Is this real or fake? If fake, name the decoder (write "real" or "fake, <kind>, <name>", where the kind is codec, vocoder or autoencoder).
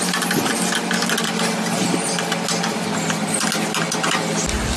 real